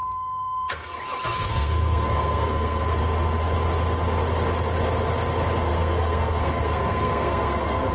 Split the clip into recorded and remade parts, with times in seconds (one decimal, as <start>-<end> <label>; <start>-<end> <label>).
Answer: 0.0-1.0 remade; 1.0-1.5 recorded; 1.5-3.0 remade; 3.0-5.7 recorded; 5.7-7.9 remade